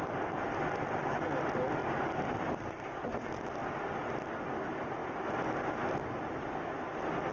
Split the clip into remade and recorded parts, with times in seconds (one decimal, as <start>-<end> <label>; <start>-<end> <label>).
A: 0.0-7.3 recorded